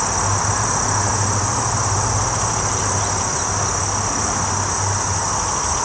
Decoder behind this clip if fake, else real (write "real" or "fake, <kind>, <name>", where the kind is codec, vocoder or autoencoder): real